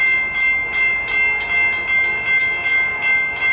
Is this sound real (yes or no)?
yes